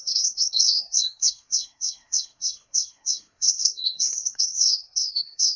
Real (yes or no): no